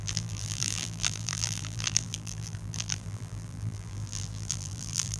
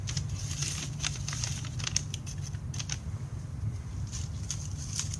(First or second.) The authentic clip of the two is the second